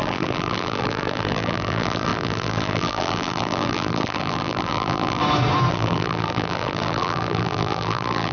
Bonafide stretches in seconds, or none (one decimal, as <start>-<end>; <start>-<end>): 5.2-5.7